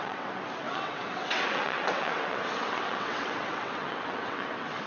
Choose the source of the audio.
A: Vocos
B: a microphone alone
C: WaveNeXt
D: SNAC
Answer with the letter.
C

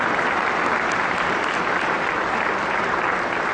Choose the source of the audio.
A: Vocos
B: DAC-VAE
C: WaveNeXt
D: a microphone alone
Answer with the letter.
D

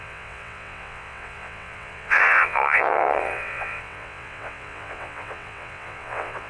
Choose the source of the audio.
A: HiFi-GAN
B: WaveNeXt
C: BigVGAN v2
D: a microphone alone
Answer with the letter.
B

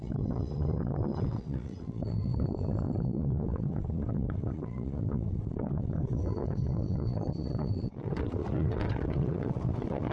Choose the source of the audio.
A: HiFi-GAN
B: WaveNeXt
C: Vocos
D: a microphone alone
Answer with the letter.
B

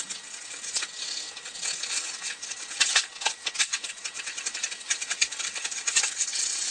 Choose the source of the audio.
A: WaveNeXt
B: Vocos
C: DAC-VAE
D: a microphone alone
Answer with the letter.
A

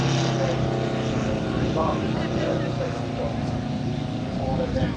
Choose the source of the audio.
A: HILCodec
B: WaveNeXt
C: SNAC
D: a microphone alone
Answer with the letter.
D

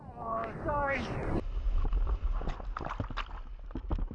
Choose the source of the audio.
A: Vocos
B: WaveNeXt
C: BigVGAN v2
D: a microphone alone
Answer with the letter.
D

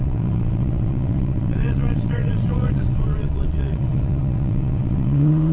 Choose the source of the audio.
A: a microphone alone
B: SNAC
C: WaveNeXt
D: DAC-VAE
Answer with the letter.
C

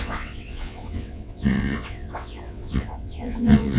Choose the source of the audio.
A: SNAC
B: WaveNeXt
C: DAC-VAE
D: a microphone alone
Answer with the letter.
B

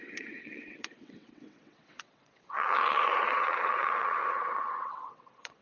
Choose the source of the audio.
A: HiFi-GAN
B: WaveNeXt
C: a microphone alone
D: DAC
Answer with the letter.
B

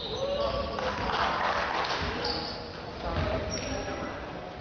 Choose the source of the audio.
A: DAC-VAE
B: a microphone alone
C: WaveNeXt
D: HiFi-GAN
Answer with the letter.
B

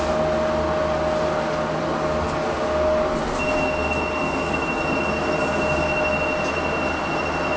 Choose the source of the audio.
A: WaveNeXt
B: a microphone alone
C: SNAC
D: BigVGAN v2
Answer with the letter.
B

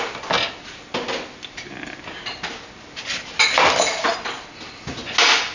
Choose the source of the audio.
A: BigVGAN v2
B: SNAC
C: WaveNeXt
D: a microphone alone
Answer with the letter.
D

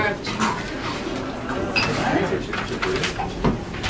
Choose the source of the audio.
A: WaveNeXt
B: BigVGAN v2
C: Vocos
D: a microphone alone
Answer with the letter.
D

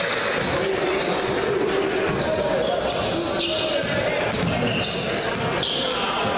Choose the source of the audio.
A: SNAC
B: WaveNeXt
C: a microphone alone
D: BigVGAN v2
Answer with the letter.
C